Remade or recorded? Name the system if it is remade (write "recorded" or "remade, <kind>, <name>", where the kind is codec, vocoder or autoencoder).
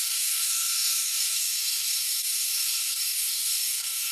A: remade, codec, DAC